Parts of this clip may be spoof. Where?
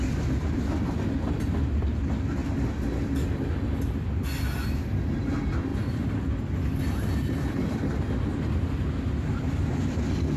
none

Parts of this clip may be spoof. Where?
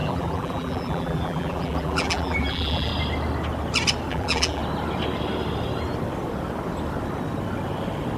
0.0-2.9 (vocoder, BigVGAN v2); 4.1-4.6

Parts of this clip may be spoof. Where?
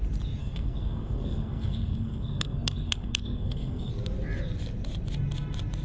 0.4-3.9 (codec, SNAC)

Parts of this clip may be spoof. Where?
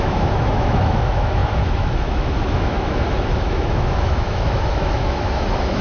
0.0-5.8 (autoencoder, DAC-VAE)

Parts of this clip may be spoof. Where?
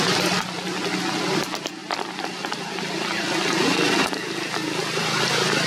none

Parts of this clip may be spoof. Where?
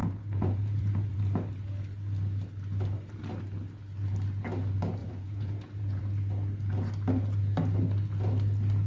0.0-1.2 (vocoder, Vocos); 5.0-6.0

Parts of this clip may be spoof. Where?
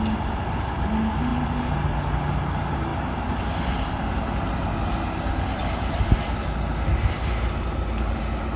none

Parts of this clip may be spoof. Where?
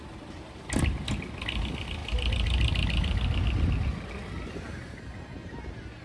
none